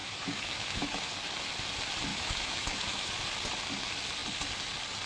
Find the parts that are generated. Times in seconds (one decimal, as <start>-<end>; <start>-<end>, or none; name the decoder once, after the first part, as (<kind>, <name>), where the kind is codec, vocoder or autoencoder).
0.0-1.1 (autoencoder, DAC-VAE); 2.1-3.1